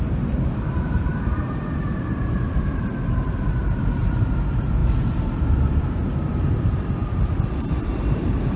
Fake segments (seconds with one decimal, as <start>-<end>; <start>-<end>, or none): 0.0-4.8; 5.4-8.6